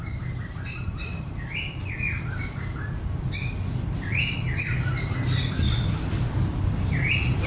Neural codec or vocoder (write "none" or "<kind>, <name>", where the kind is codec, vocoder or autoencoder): vocoder, BigVGAN v2